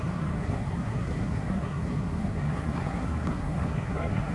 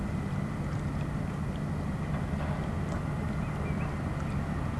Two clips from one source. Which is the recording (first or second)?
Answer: second